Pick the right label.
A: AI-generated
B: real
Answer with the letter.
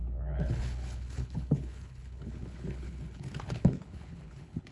A